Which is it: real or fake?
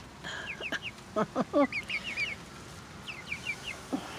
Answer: real